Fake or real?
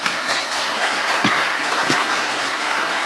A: fake